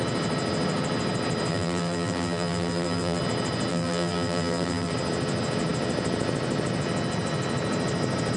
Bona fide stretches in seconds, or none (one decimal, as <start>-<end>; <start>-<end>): 0.0-1.5; 3.2-3.7; 4.9-8.4